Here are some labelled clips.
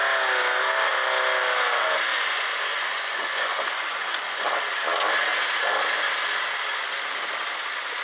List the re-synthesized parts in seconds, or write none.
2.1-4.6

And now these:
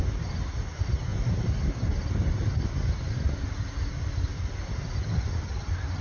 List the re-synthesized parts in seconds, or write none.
none

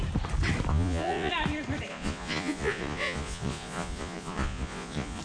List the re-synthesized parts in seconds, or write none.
0.7-1.3; 1.9-5.2

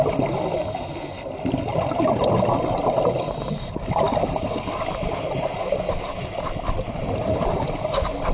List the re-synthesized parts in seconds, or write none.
none

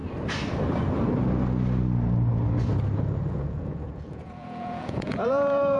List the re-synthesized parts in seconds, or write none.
3.3-5.8

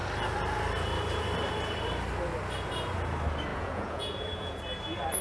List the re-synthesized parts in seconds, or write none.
3.5-4.6

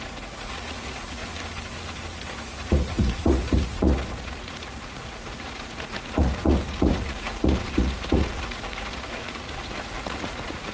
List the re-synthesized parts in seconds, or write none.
0.0-1.2; 2.3-10.7

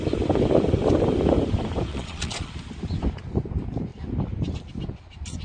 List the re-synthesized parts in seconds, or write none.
1.9-2.5